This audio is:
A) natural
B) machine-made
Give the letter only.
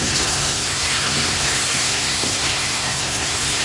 B